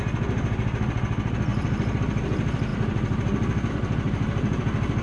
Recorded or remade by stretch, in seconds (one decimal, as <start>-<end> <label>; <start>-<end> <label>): 0.0-1.5 recorded; 1.5-2.0 remade; 2.0-2.7 recorded; 2.7-3.7 remade; 3.7-5.0 recorded